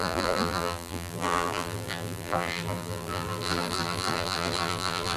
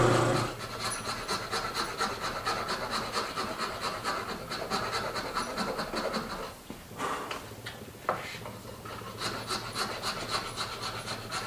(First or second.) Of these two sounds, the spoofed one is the first